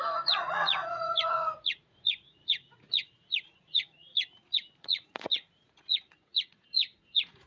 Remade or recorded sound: remade